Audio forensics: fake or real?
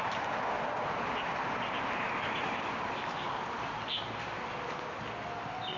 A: real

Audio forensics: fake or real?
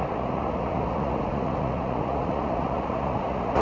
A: fake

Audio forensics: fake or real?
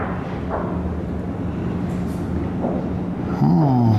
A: real